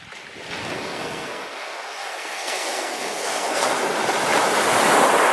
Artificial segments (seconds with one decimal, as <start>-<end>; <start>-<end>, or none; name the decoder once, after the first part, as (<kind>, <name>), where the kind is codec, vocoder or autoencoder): 0.6-3.8 (codec, SNAC)